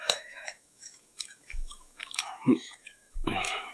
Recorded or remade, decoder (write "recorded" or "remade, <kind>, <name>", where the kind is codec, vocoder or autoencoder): remade, autoencoder, DAC-VAE